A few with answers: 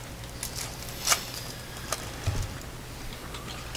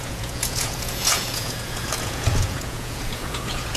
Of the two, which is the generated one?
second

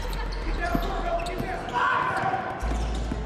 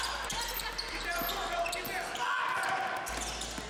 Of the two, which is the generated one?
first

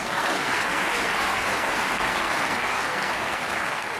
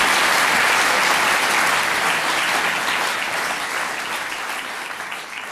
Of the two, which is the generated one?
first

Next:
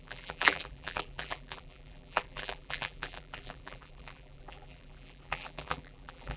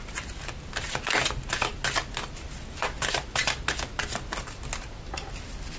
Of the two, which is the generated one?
first